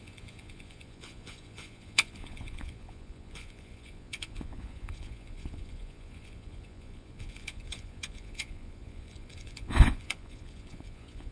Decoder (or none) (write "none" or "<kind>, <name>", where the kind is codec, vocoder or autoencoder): vocoder, Vocos